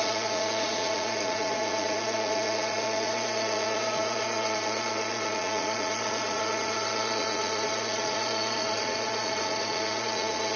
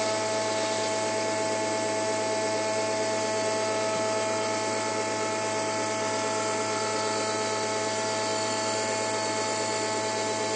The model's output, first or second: first